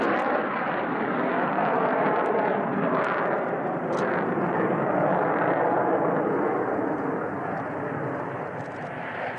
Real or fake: real